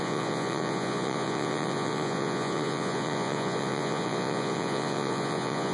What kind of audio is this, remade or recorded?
remade